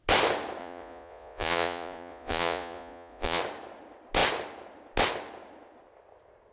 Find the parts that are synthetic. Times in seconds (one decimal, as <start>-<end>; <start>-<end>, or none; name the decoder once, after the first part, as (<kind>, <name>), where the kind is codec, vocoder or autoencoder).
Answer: 0.6-3.4 (vocoder, Vocos)